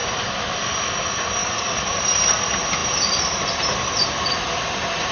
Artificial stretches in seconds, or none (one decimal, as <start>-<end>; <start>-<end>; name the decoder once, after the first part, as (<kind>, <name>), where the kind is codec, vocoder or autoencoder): 1.4-2.0 (codec, DAC)